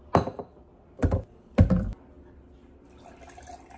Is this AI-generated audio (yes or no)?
no